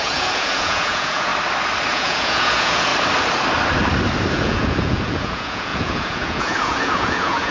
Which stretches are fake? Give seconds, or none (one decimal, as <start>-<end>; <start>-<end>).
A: 0.0-1.3; 1.9-2.9; 4.3-7.5